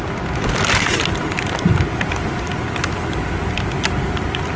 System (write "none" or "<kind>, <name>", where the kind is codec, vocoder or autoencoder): none